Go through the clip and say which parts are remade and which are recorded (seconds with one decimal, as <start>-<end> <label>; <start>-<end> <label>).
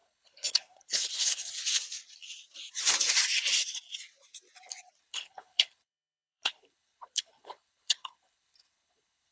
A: 0.0-1.5 remade; 1.5-5.0 recorded; 5.0-9.3 remade